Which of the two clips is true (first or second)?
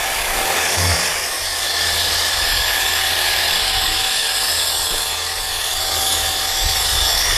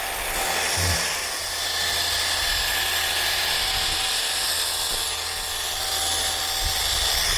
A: second